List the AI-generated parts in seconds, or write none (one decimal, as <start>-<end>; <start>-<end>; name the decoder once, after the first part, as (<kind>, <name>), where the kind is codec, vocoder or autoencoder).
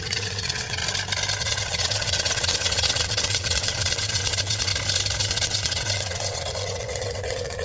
0.0-0.8 (vocoder, WaveNeXt); 1.4-4.7; 5.2-7.6